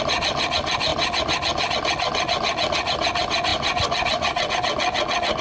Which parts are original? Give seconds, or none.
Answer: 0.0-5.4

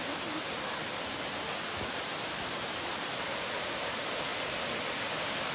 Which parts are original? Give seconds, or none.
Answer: 0.0-5.5

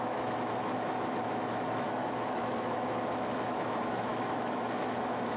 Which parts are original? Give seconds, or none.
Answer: none